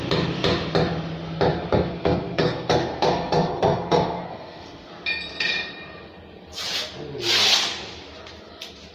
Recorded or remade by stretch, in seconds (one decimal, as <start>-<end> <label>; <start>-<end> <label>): 0.0-1.5 recorded; 1.5-4.9 remade; 4.9-8.9 recorded